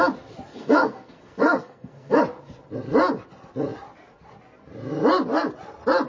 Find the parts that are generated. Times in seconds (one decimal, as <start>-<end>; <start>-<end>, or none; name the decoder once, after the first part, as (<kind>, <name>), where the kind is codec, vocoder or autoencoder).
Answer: 0.5-2.2 (codec, SNAC)